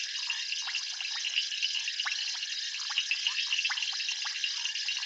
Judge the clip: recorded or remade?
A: recorded